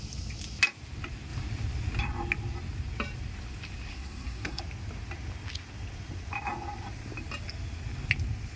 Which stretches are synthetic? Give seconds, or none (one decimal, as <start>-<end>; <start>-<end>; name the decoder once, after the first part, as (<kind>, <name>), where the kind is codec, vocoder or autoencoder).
3.9-4.6 (codec, SNAC)